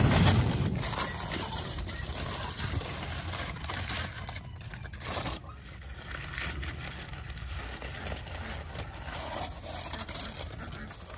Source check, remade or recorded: recorded